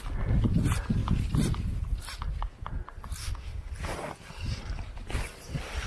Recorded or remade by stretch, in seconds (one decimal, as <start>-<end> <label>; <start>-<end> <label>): 0.0-3.2 recorded; 3.2-3.7 remade; 3.7-5.9 recorded